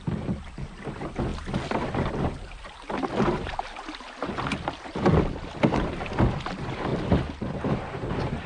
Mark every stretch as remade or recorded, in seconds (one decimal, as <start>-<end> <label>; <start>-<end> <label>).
0.0-8.5 recorded